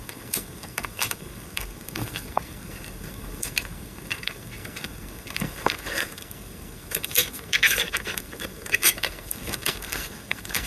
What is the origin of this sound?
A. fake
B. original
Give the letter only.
A